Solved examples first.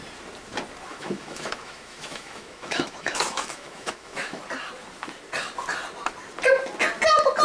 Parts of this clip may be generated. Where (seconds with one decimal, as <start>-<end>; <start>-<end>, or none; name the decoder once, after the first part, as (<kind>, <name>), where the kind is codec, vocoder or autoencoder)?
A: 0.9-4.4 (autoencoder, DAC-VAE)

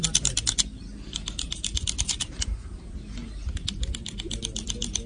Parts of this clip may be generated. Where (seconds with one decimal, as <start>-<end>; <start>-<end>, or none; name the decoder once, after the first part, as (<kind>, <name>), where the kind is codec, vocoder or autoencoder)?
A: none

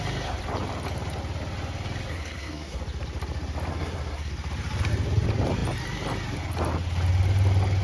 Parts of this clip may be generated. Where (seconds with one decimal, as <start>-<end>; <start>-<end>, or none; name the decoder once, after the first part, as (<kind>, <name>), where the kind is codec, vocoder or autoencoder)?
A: 2.1-2.8 (codec, SNAC); 3.7-4.3

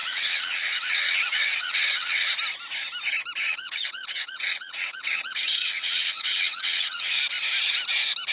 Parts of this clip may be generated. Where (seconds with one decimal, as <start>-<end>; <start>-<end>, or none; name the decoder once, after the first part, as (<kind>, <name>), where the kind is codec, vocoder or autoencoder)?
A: 0.0-2.3 (vocoder, WaveNeXt); 3.5-7.2